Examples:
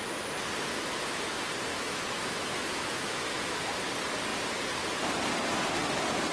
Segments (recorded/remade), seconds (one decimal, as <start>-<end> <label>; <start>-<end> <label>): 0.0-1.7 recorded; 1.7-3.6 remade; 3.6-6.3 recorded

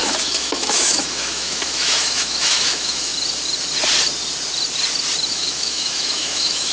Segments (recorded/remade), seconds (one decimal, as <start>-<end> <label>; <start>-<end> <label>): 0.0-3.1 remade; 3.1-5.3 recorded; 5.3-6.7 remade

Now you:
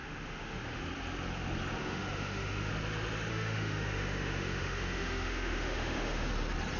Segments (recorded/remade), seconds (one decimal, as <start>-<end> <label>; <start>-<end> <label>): 0.0-0.8 remade; 0.8-1.8 recorded; 1.8-2.7 remade; 2.7-3.3 recorded; 3.3-6.3 remade; 6.3-6.8 recorded

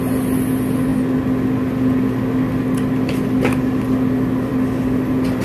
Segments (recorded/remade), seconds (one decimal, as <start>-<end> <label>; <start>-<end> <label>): 0.0-5.4 recorded

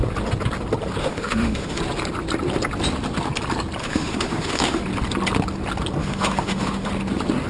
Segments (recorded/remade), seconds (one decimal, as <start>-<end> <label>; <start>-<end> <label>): 0.0-1.0 recorded; 1.0-1.8 remade; 1.8-3.8 recorded; 3.8-4.8 remade; 4.8-6.0 recorded; 6.0-6.9 remade; 6.9-7.5 recorded

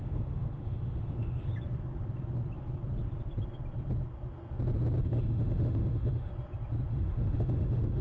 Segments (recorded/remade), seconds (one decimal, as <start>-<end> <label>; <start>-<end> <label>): 0.0-1.5 remade; 1.5-5.0 recorded; 5.0-6.3 remade; 6.3-6.9 recorded; 6.9-8.0 remade

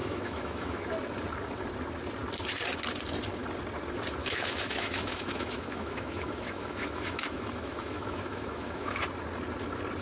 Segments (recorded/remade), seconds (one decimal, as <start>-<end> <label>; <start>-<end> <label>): 0.0-0.8 remade; 0.8-4.2 recorded; 4.2-9.0 remade; 9.0-10.0 recorded